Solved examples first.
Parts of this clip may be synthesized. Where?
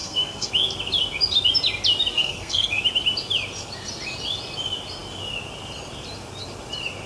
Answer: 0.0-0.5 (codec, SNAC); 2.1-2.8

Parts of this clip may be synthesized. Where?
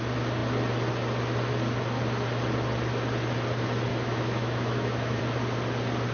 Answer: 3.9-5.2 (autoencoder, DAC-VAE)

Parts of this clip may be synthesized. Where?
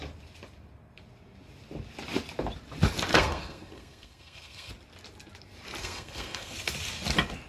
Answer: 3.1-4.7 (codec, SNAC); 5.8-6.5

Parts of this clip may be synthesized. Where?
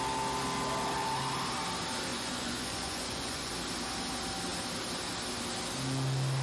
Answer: 2.1-3.5 (vocoder, Vocos)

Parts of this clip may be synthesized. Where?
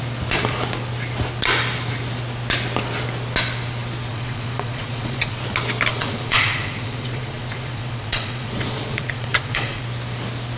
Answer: 4.1-5.4 (vocoder, Vocos); 5.9-9.8